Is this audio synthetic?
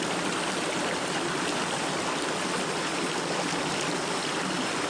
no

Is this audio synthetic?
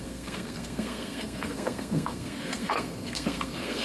yes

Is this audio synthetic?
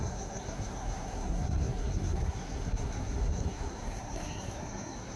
yes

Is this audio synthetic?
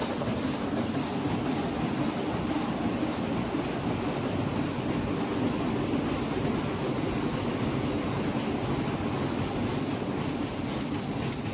no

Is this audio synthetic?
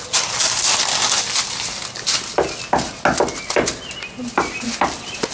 no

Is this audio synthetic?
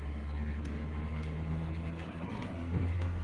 yes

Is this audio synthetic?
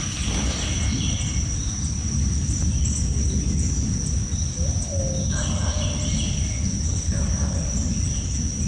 no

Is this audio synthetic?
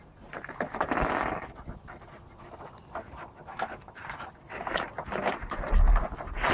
no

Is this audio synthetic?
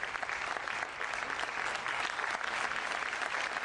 no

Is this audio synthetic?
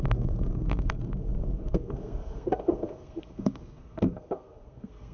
yes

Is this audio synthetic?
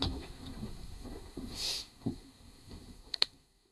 yes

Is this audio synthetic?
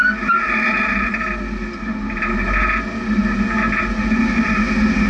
no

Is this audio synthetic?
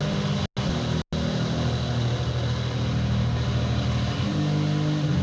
no